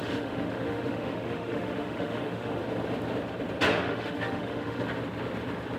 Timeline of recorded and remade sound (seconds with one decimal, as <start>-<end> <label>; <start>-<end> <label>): 0.0-2.6 remade; 2.6-3.7 recorded; 3.7-4.9 remade; 4.9-5.8 recorded